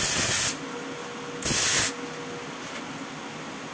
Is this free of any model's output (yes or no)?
yes